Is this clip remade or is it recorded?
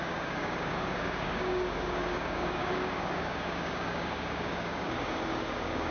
remade